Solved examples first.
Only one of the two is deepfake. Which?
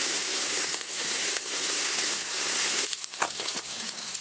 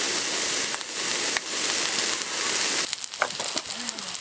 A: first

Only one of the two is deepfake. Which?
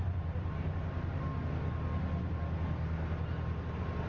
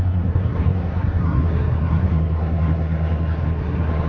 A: second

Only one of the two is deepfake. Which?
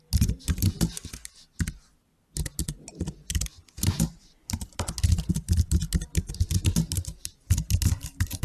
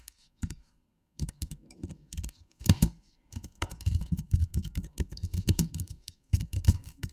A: second